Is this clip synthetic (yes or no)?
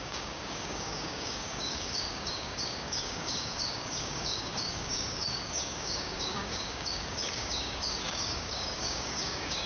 yes